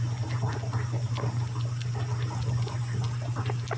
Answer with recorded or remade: recorded